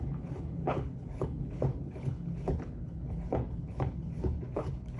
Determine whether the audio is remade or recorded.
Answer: remade